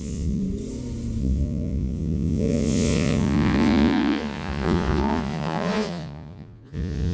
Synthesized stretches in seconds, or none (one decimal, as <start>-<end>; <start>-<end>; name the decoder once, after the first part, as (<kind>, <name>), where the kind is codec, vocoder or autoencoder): 0.0-0.4 (vocoder, Vocos); 1.2-7.1